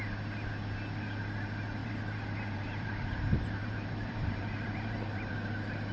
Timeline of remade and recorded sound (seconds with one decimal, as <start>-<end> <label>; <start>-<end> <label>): 0.0-1.8 recorded; 1.8-5.3 remade; 5.3-5.9 recorded